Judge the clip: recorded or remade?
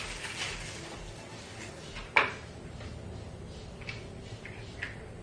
recorded